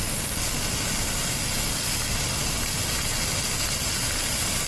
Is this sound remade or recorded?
recorded